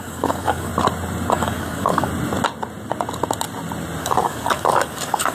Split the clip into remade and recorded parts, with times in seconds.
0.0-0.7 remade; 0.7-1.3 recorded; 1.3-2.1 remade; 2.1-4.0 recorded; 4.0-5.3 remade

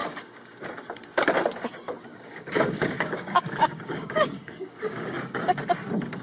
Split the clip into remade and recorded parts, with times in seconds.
0.0-0.6 remade; 0.6-2.1 recorded; 2.1-5.4 remade; 5.4-6.2 recorded

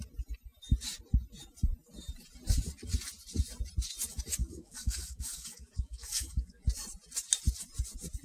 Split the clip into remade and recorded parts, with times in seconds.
0.0-4.4 recorded; 4.4-6.6 remade; 6.6-8.2 recorded

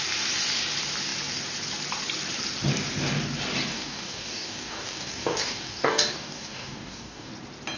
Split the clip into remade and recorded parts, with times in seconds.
0.0-3.7 recorded; 3.7-7.3 remade; 7.3-7.8 recorded

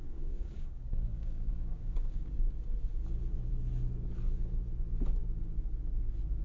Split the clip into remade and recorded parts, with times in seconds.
0.0-2.3 remade; 2.3-6.4 recorded